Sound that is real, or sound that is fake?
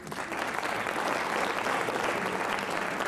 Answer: real